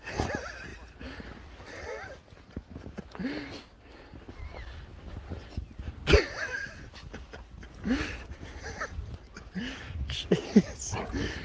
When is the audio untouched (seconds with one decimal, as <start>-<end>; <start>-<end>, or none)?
0.0-11.4